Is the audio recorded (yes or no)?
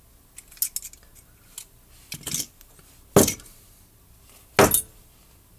yes